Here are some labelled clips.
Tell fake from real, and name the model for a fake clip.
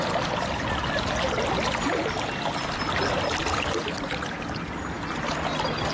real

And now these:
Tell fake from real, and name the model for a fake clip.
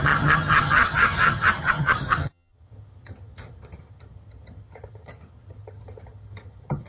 fake, vocoder, HiFi-GAN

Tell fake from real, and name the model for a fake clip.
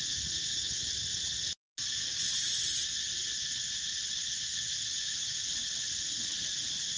real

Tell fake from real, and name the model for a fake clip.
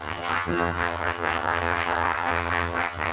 fake, vocoder, HiFi-GAN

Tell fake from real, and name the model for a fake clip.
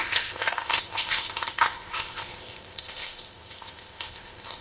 fake, codec, ZipCodec